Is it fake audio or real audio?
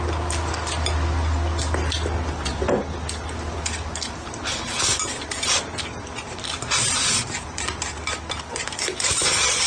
real